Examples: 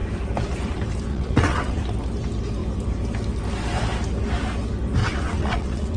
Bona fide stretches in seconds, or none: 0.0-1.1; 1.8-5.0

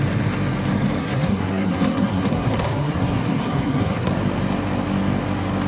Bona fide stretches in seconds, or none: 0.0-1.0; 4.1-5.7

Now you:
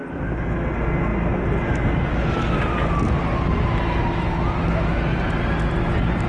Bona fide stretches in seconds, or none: 0.0-6.3

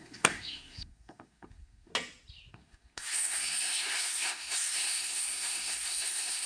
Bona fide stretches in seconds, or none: 1.9-2.5

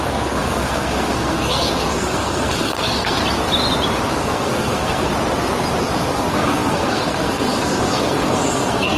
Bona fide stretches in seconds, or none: 3.2-4.1; 5.1-5.8

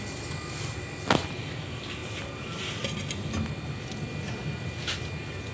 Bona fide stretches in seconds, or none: 0.0-5.5